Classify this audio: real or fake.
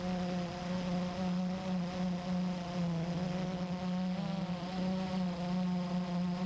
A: real